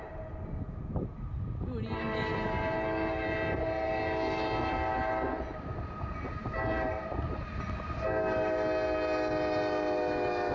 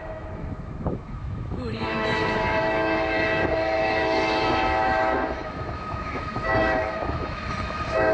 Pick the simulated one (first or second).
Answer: second